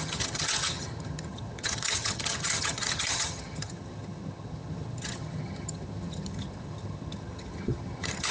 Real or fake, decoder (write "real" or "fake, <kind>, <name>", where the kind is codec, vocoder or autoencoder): fake, vocoder, HiFi-GAN